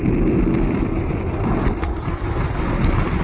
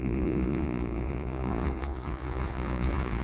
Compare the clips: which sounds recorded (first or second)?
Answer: first